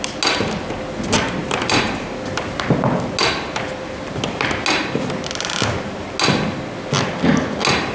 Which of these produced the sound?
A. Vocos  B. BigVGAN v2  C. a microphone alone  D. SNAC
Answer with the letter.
C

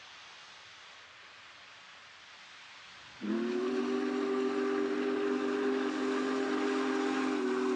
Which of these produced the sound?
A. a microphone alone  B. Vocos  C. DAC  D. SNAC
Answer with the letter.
A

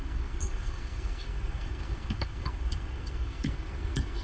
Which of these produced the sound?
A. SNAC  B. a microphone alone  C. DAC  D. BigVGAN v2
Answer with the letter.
A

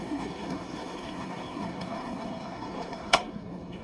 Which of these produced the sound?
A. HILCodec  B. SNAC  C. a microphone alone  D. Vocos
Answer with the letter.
B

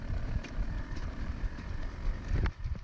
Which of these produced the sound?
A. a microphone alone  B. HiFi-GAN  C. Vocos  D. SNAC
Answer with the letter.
A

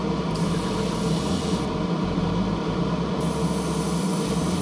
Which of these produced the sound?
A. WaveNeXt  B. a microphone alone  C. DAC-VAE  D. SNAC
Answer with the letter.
B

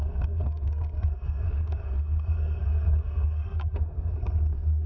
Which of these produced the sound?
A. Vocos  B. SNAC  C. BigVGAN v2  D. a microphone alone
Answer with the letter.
B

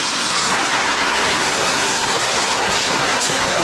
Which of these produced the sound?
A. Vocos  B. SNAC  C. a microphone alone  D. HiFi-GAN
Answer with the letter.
B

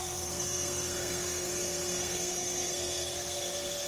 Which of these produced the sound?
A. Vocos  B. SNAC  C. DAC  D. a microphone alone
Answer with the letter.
B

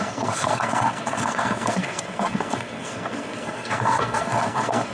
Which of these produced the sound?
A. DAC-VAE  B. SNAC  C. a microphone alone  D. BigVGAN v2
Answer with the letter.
B